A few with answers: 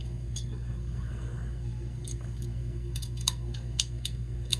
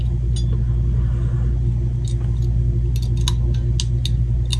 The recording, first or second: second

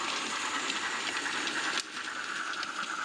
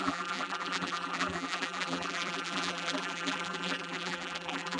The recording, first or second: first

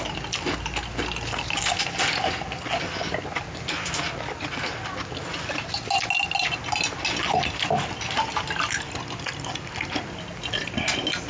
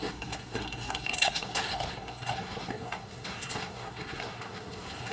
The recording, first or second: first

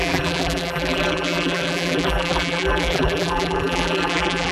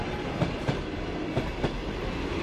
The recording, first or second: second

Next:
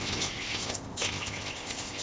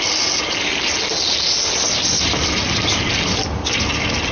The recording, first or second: second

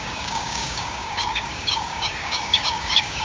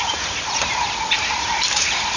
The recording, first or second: second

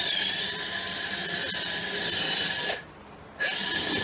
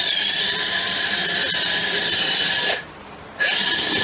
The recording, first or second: first